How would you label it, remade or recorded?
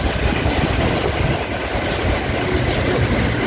recorded